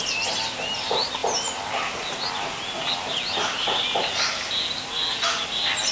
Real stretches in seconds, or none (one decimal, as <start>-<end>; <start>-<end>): 0.0-5.9